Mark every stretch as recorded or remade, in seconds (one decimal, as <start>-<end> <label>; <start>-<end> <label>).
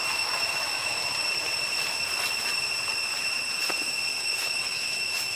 0.0-1.0 remade; 1.0-4.2 recorded; 4.2-5.4 remade